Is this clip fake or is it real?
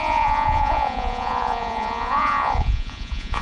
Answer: fake